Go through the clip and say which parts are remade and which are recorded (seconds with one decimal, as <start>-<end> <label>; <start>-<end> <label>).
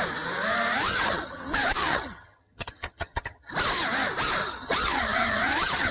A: 0.0-0.9 recorded; 0.9-1.4 remade; 1.4-1.8 recorded; 1.8-3.5 remade; 3.5-4.4 recorded; 4.4-5.9 remade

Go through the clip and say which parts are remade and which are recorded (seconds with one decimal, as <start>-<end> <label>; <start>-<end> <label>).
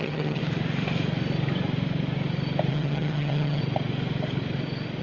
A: 0.0-0.4 remade; 0.4-2.7 recorded; 2.7-3.6 remade; 3.6-5.0 recorded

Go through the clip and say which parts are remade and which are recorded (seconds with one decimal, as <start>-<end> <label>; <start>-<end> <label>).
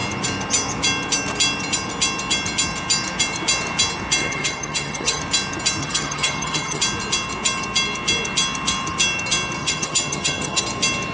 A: 0.0-4.2 recorded; 4.2-5.2 remade; 5.2-5.8 recorded; 5.8-6.8 remade; 6.8-9.6 recorded; 9.6-10.6 remade; 10.6-11.1 recorded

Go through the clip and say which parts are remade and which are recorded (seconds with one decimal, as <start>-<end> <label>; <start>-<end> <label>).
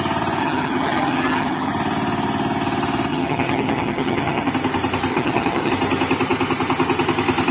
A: 0.0-0.4 recorded; 0.4-1.7 remade; 1.7-3.1 recorded; 3.1-4.5 remade; 4.5-5.1 recorded; 5.1-5.7 remade; 5.7-7.5 recorded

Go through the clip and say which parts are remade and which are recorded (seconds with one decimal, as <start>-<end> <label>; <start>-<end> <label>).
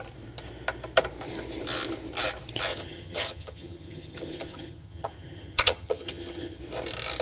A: 0.0-2.7 recorded; 2.7-6.6 remade; 6.6-7.2 recorded